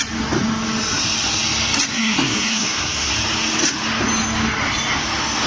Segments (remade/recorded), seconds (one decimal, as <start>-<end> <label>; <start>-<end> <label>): 0.0-1.9 recorded; 1.9-3.1 remade; 3.1-5.5 recorded